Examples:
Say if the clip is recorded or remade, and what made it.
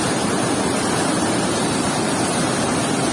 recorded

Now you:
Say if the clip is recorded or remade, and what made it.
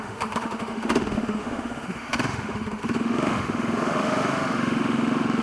remade, autoencoder, DAC-VAE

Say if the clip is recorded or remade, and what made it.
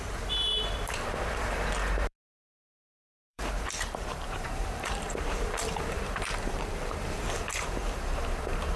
remade, vocoder, BigVGAN v2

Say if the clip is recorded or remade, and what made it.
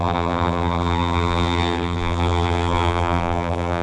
remade, vocoder, BigVGAN v2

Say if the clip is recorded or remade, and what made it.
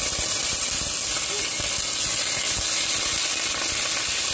recorded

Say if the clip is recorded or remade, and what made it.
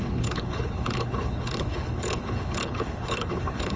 remade, codec, HILCodec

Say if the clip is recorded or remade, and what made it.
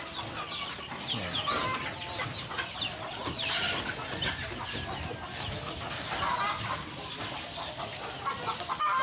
recorded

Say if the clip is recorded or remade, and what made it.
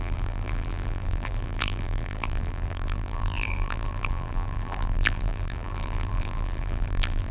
remade, vocoder, BigVGAN v2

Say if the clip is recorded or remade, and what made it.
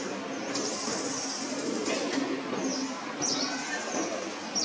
recorded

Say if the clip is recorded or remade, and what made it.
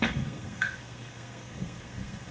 remade, codec, SNAC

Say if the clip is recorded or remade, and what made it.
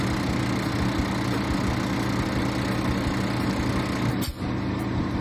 recorded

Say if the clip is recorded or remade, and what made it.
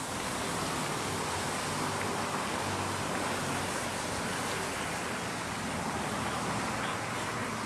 recorded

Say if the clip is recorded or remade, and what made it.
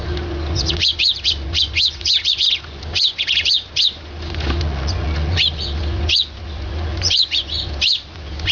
remade, vocoder, Vocos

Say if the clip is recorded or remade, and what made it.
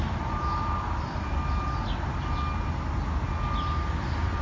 recorded